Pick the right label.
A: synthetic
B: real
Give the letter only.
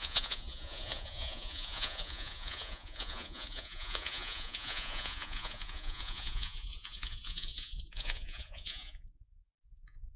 A